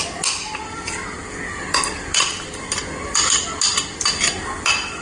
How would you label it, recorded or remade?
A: recorded